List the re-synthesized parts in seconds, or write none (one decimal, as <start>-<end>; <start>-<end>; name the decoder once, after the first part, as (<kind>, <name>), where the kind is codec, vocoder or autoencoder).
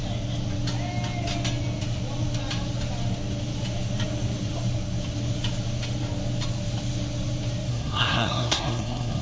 7.7-9.2 (codec, SNAC)